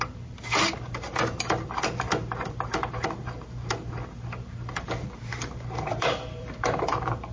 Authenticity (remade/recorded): remade